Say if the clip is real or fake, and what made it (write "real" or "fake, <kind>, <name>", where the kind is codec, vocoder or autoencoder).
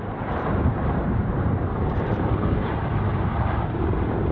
fake, vocoder, BigVGAN v2